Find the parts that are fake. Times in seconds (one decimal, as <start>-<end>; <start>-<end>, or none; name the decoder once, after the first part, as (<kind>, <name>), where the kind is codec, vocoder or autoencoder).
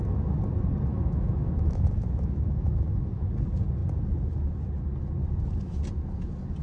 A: 0.9-3.3 (autoencoder, DAC-VAE)